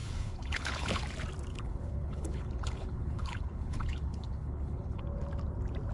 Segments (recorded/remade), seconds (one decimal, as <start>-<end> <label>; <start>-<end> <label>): 0.0-1.0 remade; 1.0-1.5 recorded; 1.5-5.0 remade; 5.0-5.9 recorded